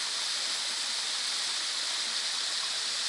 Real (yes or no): yes